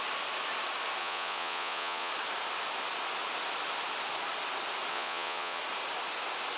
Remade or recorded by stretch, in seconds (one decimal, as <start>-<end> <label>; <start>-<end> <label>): 0.0-1.0 recorded; 1.0-2.1 remade; 2.1-4.9 recorded; 4.9-5.6 remade; 5.6-6.6 recorded